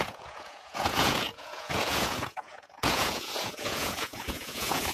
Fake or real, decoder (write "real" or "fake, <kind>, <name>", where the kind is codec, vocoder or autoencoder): fake, vocoder, Vocos